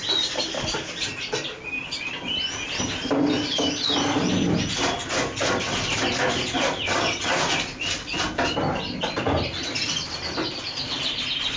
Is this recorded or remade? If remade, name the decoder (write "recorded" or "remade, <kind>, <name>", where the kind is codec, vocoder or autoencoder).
recorded